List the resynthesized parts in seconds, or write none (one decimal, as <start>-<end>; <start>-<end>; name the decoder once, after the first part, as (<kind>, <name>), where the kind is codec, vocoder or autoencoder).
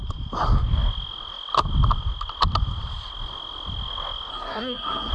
4.3-5.1 (codec, SNAC)